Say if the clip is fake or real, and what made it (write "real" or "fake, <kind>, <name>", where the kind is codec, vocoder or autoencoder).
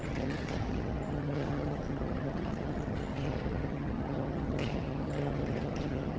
fake, vocoder, HiFi-GAN